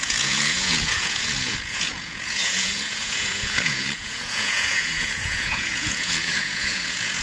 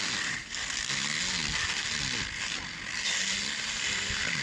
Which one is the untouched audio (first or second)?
second